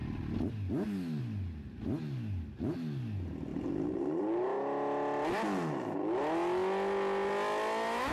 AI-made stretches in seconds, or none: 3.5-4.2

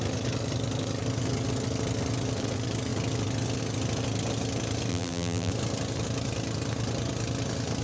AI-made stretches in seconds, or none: 4.9-5.5

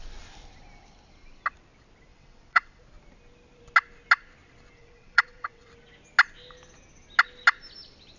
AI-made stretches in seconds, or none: 2.1-2.8; 4.8-5.7

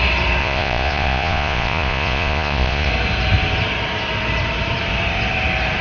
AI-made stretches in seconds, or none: 0.4-2.9

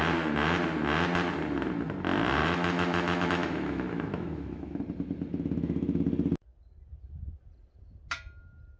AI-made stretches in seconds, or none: 2.4-4.8; 5.3-6.0

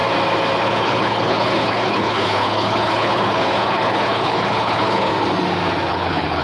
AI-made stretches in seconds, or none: 0.6-5.1; 5.9-6.4